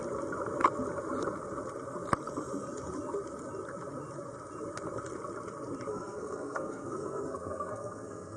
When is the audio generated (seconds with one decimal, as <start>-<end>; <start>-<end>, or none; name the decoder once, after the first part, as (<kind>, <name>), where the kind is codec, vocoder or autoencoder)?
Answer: 5.9-8.4 (codec, SNAC)